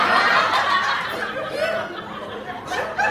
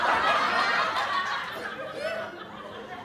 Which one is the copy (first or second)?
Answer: first